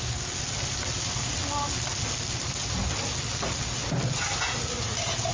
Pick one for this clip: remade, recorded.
recorded